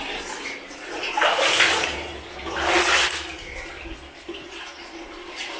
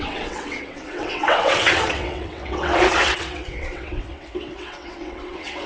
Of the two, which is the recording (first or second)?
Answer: first